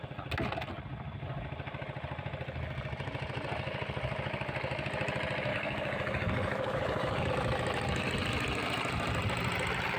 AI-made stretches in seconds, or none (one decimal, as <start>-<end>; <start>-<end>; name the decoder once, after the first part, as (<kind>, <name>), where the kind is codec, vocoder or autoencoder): 5.5-7.3 (codec, DAC)